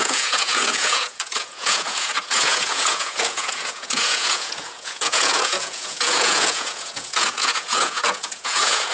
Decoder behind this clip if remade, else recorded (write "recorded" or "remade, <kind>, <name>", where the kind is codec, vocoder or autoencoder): remade, vocoder, Vocos